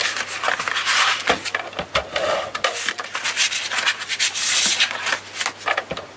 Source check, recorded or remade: recorded